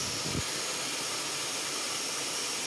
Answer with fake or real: real